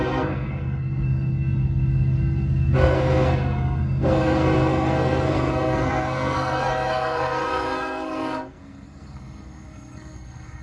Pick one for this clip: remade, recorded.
remade